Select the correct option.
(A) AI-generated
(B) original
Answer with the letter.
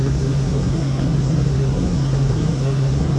A